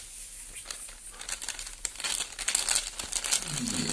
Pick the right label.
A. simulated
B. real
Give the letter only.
B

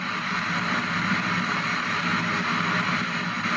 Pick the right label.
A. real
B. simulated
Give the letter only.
B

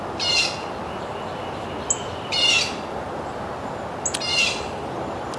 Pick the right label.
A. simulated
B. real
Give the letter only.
B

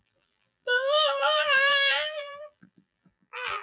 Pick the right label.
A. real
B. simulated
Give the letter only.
B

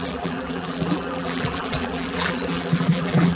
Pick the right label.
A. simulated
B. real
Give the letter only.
A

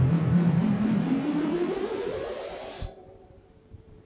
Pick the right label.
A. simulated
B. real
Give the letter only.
A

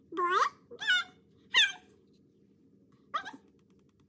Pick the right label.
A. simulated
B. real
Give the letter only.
B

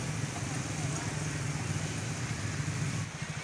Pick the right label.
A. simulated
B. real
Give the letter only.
B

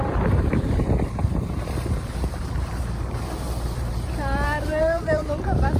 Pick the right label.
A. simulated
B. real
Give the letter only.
A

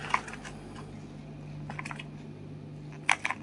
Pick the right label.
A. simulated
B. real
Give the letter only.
B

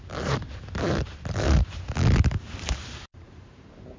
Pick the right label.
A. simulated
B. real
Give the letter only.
A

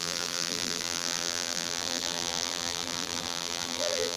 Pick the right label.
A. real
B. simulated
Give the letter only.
B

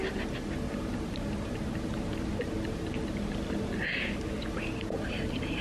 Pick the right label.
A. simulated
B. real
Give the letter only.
B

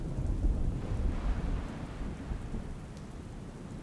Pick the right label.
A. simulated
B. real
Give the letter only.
B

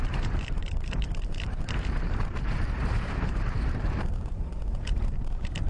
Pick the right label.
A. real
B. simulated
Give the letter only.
B